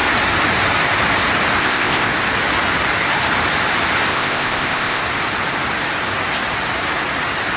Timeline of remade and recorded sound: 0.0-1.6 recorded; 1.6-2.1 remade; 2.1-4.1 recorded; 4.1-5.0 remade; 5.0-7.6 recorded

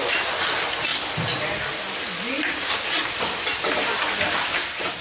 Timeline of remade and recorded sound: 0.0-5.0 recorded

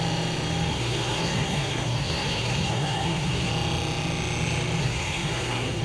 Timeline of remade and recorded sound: 0.0-0.7 recorded; 0.7-3.5 remade; 3.5-4.8 recorded; 4.8-5.8 remade

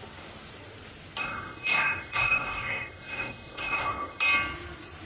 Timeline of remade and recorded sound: 0.0-1.2 recorded; 1.2-4.2 remade; 4.2-5.0 recorded

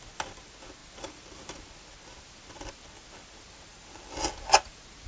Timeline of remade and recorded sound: 0.0-3.7 recorded; 3.7-4.3 remade; 4.3-5.1 recorded

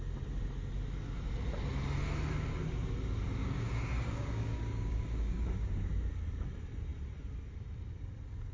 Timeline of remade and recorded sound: 0.0-3.4 recorded; 3.4-5.9 remade; 5.9-8.5 recorded